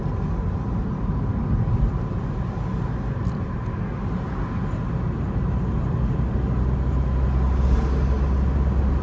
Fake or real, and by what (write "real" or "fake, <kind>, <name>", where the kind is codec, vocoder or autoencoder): real